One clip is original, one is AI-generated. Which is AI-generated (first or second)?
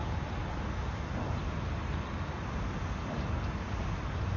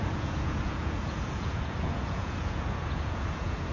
second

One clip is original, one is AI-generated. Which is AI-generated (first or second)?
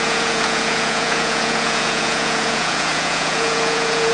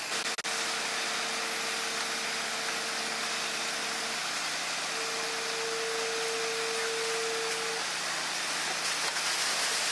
first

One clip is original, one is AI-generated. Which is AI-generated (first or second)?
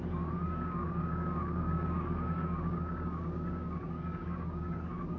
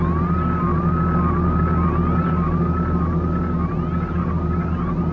first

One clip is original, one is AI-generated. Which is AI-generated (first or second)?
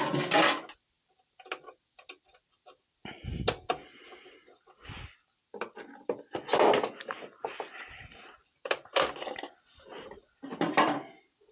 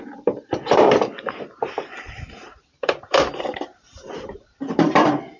second